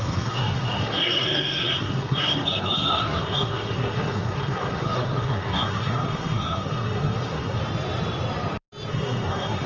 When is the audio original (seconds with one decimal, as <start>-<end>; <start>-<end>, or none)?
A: 7.6-8.9